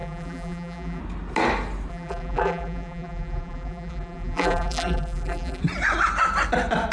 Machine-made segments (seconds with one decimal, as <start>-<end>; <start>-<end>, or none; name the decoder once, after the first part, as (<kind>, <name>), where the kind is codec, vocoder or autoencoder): 0.0-1.0 (vocoder, BigVGAN v2); 1.9-5.6